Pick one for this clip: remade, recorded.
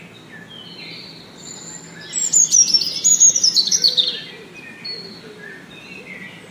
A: recorded